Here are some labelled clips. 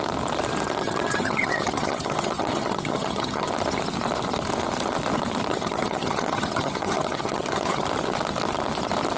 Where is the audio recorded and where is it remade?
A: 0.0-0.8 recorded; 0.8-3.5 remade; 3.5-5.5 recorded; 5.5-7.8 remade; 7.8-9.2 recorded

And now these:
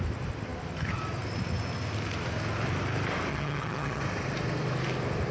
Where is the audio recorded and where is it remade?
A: 0.0-3.3 recorded; 3.3-4.0 remade; 4.0-5.3 recorded

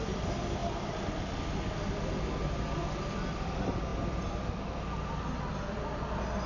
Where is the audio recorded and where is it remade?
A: 0.0-6.5 recorded

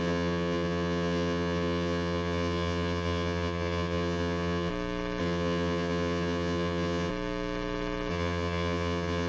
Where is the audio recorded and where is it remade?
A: 0.0-4.7 remade; 4.7-5.2 recorded; 5.2-7.1 remade; 7.1-8.1 recorded; 8.1-9.3 remade

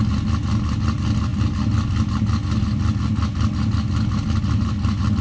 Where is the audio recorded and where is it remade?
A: 0.0-5.2 recorded

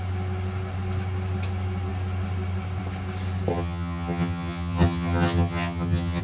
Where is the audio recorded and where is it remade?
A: 0.0-3.5 recorded; 3.5-6.2 remade

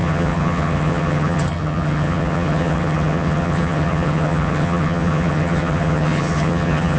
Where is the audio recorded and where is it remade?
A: 0.0-7.0 remade